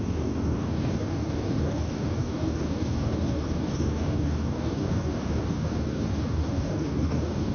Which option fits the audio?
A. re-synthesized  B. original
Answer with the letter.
A